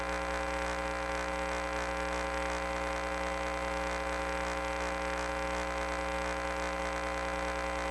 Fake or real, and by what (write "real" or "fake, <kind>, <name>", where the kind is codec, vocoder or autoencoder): real